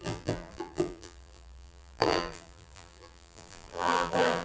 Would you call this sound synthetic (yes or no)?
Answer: yes